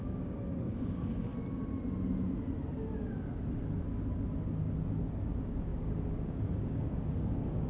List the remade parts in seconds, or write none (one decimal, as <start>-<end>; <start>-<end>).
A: 0.0-1.3; 5.0-7.7